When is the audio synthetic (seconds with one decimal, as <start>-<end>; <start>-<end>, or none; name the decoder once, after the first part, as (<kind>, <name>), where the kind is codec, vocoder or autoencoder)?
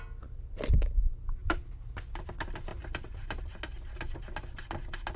1.4-2.0 (vocoder, BigVGAN v2); 2.7-3.4